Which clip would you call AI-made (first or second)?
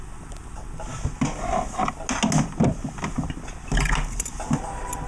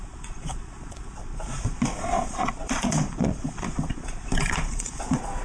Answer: second